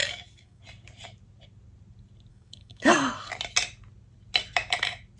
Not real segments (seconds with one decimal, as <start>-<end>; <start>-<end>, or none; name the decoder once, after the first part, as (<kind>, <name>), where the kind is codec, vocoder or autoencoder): 0.0-0.6 (codec, DAC); 2.3-3.3